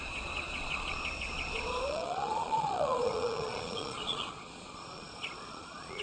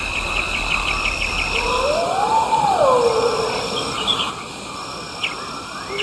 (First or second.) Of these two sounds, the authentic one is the second